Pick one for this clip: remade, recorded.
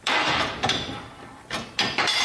remade